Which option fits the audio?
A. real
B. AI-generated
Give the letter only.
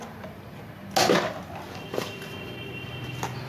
A